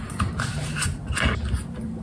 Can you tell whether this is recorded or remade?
recorded